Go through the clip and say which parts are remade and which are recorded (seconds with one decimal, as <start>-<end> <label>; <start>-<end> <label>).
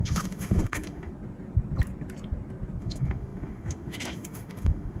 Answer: 0.0-1.1 remade; 1.1-2.8 recorded; 2.8-5.0 remade